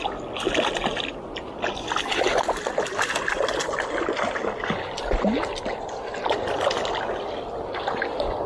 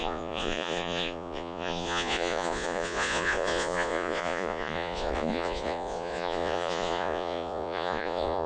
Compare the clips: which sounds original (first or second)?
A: first